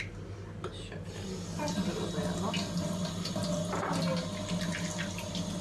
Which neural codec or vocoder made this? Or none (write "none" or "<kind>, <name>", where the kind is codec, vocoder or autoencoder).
none